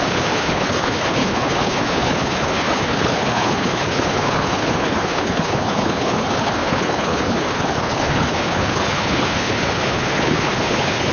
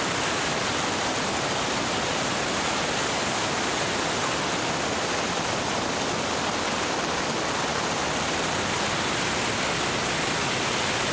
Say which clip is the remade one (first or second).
first